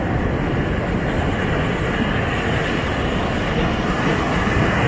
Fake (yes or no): no